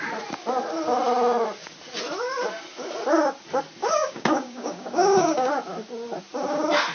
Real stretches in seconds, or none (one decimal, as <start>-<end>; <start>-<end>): 0.0-3.8; 5.5-6.9